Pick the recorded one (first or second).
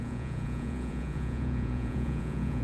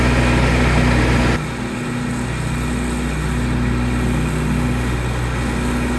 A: second